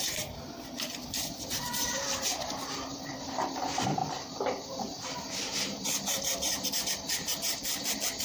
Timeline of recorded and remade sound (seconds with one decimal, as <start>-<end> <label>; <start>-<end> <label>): 0.0-4.0 remade; 4.0-4.7 recorded; 4.7-8.2 remade